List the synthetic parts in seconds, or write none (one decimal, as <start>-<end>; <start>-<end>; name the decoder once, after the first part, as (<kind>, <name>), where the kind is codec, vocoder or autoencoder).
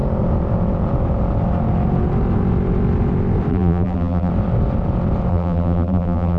3.5-4.3 (vocoder, BigVGAN v2); 5.3-6.4